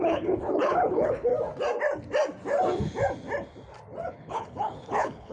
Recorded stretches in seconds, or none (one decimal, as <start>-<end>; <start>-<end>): 1.3-4.1